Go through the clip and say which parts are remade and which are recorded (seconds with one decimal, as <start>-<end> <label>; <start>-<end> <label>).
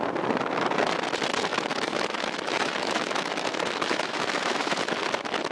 0.0-1.5 recorded; 1.5-4.8 remade; 4.8-5.5 recorded